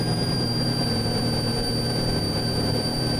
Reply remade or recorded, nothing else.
remade